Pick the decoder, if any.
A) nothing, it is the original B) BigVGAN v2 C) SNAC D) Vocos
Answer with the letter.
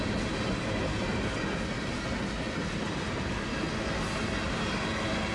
A